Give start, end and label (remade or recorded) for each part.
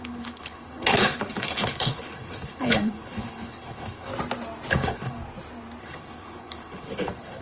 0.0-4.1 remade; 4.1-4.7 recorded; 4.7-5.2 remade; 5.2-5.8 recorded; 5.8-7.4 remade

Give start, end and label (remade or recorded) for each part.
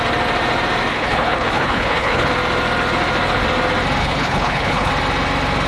0.0-0.9 recorded; 0.9-2.3 remade; 2.3-4.0 recorded; 4.0-4.9 remade; 4.9-5.7 recorded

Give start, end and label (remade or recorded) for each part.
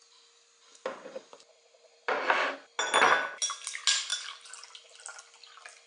0.0-5.9 recorded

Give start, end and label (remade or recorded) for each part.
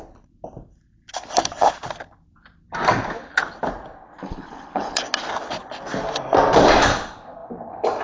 0.0-4.2 recorded; 4.2-5.0 remade; 5.0-8.0 recorded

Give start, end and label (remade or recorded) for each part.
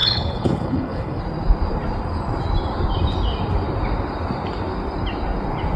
0.0-1.2 remade; 1.2-5.8 recorded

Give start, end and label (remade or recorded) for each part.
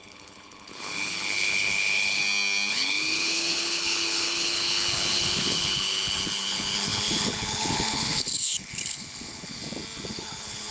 0.0-2.2 remade; 2.2-2.7 recorded; 2.7-9.6 remade; 9.6-10.1 recorded; 10.1-10.7 remade